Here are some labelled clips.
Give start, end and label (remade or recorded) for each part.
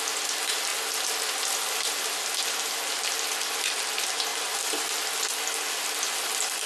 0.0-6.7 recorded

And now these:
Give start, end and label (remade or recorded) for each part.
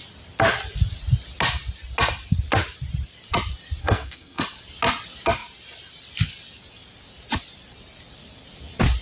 0.0-3.8 recorded; 3.8-4.4 remade; 4.4-9.0 recorded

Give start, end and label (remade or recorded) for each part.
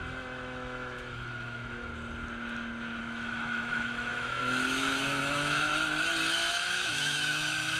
0.0-1.9 remade; 1.9-3.0 recorded; 3.0-5.7 remade; 5.7-6.5 recorded; 6.5-7.8 remade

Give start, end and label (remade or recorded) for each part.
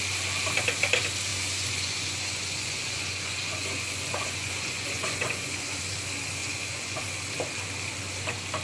0.0-1.3 recorded; 1.3-5.8 remade; 5.8-6.4 recorded; 6.4-7.0 remade; 7.0-8.6 recorded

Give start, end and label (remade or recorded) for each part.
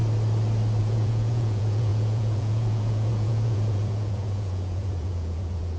0.0-0.8 recorded; 0.8-5.8 remade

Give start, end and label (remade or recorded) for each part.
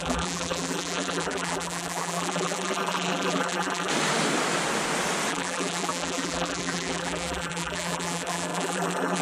0.0-3.9 remade; 3.9-5.3 recorded; 5.3-9.2 remade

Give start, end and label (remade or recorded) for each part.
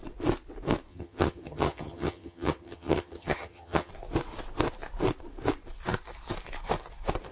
0.0-0.9 recorded; 0.9-3.9 remade; 3.9-7.3 recorded